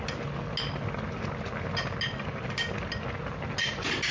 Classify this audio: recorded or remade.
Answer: recorded